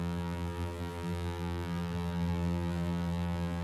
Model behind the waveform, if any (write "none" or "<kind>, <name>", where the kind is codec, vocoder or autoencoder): vocoder, BigVGAN v2